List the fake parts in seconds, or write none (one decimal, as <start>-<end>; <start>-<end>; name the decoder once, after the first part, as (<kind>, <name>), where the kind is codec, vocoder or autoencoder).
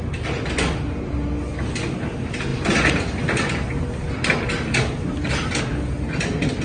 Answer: none